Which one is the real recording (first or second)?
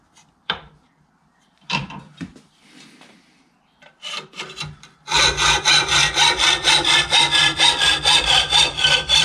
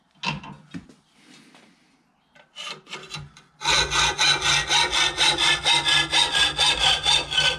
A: second